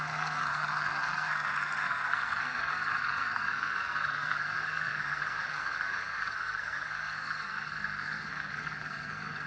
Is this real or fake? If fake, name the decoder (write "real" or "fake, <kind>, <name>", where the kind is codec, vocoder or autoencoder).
fake, codec, SNAC